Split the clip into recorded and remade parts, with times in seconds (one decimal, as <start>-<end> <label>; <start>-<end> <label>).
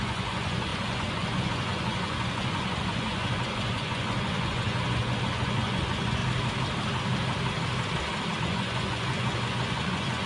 0.0-6.2 remade; 6.2-8.4 recorded; 8.4-10.3 remade